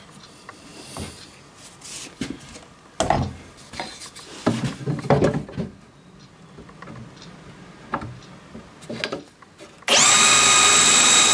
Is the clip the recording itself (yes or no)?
yes